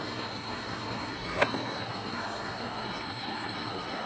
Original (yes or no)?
no